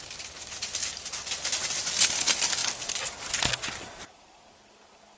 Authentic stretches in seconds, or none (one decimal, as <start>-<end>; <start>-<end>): 0.0-5.2